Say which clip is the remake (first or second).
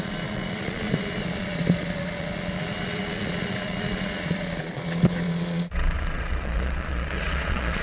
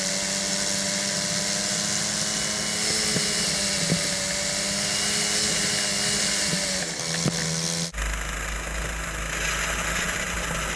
first